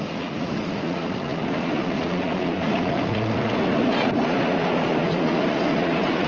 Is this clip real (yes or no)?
no